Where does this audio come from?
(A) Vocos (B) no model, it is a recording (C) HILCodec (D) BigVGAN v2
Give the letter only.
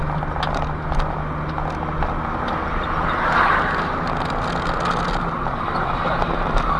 B